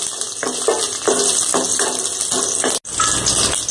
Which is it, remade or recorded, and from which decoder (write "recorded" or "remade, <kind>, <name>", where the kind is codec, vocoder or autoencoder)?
recorded